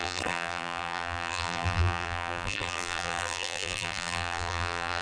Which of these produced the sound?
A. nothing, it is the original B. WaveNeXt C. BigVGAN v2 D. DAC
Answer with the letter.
C